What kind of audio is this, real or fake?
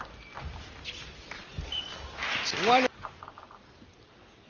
real